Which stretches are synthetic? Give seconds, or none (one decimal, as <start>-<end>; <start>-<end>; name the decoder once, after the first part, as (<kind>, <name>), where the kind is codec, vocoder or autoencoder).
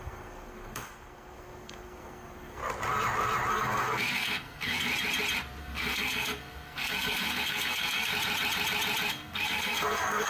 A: 0.0-2.6 (codec, SNAC); 3.5-4.9; 5.6-8.1; 9.1-10.3